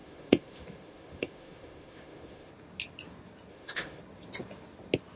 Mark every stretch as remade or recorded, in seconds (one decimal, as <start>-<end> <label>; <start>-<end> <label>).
0.0-2.5 remade; 2.5-3.5 recorded; 3.5-4.0 remade; 4.0-5.2 recorded